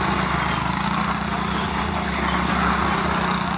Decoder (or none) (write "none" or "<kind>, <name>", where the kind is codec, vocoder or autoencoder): none